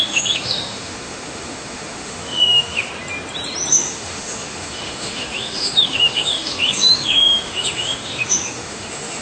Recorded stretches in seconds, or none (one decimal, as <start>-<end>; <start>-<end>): 2.9-3.7